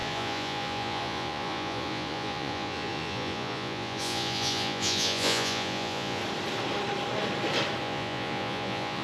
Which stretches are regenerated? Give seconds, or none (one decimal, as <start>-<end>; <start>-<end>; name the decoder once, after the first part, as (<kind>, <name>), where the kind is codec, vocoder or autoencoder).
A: 0.0-6.2 (vocoder, Vocos); 7.8-9.0